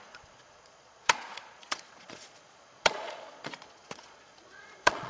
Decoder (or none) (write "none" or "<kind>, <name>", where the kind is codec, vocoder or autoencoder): vocoder, Vocos